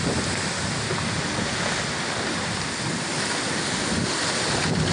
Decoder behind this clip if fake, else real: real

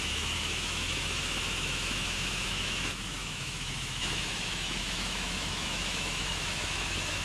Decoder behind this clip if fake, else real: fake, autoencoder, DAC-VAE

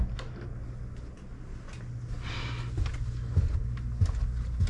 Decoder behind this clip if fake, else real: real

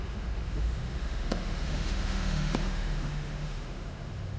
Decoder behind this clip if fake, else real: fake, autoencoder, DAC-VAE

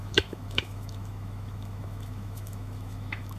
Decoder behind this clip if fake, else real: fake, autoencoder, DAC-VAE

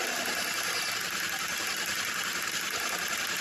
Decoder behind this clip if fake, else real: real